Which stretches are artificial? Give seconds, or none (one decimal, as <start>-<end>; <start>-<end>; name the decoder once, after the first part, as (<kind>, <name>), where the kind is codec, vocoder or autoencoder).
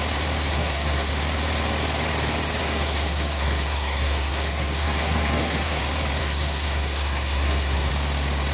0.5-1.1 (codec, SNAC); 2.6-5.8; 6.2-7.9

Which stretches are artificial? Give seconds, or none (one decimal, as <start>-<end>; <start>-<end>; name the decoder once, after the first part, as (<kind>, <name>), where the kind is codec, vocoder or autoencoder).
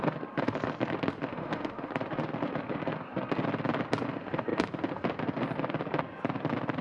1.3-1.9 (autoencoder, DAC-VAE)